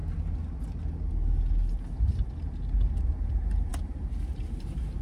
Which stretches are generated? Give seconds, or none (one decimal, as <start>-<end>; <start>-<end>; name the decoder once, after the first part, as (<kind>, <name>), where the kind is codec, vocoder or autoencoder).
3.0-5.0 (vocoder, BigVGAN v2)